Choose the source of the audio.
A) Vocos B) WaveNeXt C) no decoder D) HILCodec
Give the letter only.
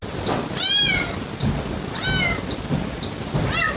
C